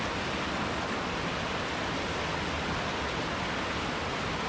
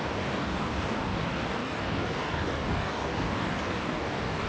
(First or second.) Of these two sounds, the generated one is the second